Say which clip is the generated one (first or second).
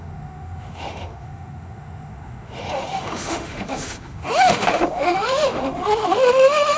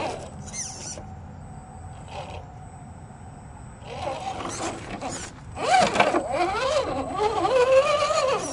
first